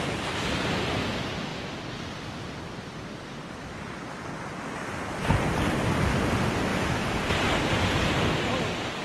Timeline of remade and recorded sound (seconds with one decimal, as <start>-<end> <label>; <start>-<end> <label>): 0.0-1.5 recorded; 1.5-4.1 remade; 4.1-6.7 recorded; 6.7-8.0 remade; 8.0-9.0 recorded